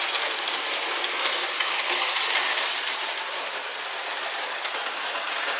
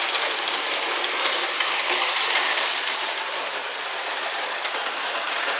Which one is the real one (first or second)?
first